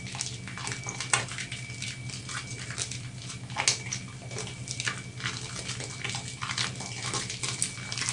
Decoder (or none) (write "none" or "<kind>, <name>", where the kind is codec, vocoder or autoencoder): none